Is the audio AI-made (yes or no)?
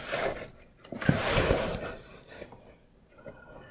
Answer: no